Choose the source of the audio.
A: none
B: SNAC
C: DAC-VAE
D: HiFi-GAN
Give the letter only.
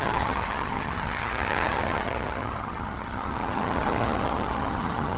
D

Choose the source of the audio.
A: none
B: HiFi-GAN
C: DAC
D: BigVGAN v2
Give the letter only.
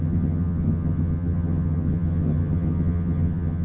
B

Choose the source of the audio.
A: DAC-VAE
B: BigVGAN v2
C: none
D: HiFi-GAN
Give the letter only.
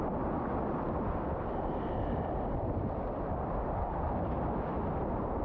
C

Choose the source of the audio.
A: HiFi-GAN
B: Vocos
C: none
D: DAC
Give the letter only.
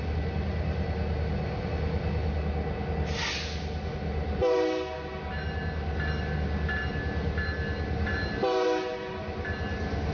C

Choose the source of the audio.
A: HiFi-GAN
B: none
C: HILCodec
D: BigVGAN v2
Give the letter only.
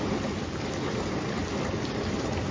B